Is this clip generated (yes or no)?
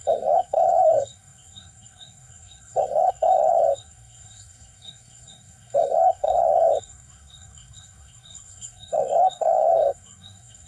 yes